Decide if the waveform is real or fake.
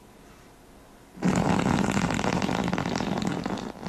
real